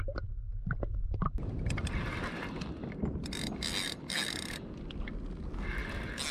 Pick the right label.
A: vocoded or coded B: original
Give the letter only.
B